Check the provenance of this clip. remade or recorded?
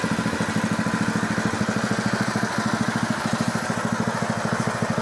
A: recorded